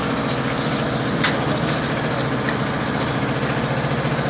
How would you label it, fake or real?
real